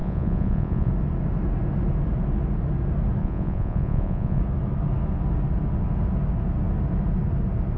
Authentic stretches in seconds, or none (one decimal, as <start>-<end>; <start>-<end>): 0.9-3.2; 4.4-7.8